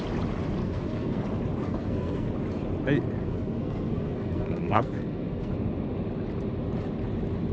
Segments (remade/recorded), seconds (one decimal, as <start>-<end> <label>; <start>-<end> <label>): 0.0-0.6 recorded; 0.6-1.2 remade; 1.2-1.6 recorded; 1.6-2.3 remade; 2.3-3.2 recorded; 3.2-5.5 remade; 5.5-7.5 recorded

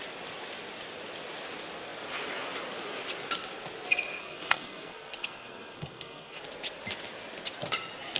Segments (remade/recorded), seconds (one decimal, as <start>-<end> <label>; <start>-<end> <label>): 0.0-4.2 recorded; 4.2-6.4 remade; 6.4-8.2 recorded

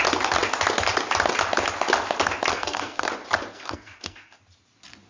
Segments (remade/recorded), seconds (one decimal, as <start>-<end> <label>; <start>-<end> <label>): 0.0-2.5 recorded; 2.5-3.1 remade; 3.1-3.5 recorded; 3.5-4.4 remade; 4.4-5.1 recorded

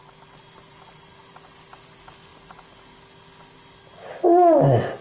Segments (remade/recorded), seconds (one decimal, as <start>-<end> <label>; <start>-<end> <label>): 0.0-5.0 recorded

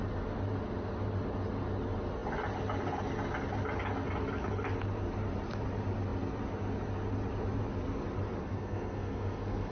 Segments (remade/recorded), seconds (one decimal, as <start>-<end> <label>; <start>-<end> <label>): 0.0-8.4 recorded; 8.4-9.7 remade

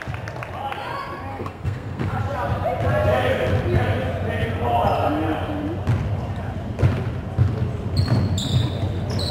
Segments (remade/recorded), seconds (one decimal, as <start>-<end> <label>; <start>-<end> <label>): 0.0-1.3 recorded; 1.3-2.2 remade; 2.2-9.3 recorded

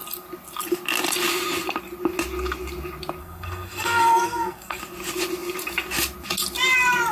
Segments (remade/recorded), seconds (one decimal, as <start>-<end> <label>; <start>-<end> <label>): 0.0-3.2 recorded; 3.2-4.8 remade; 4.8-7.1 recorded